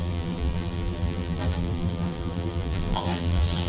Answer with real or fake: fake